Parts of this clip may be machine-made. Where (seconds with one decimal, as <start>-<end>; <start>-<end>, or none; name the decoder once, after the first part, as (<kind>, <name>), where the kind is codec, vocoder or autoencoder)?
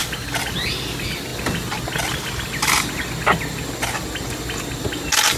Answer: none